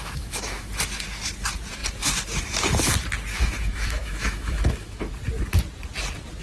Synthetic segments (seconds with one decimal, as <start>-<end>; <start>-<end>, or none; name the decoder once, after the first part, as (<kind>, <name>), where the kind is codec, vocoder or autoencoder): 0.0-0.7 (autoencoder, DAC-VAE); 3.3-5.1